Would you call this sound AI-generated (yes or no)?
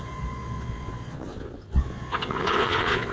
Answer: yes